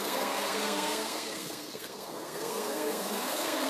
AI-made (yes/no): yes